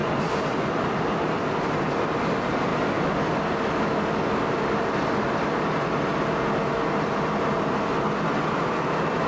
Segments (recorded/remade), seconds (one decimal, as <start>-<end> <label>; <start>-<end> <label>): 0.0-1.5 remade; 1.5-9.3 recorded